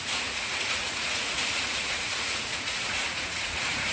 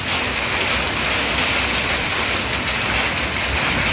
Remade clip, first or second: first